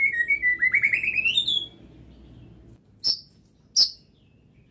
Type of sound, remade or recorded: recorded